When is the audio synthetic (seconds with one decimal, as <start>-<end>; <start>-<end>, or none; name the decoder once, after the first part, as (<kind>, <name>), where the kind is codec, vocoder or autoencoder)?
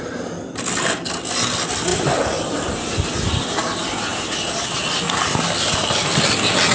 none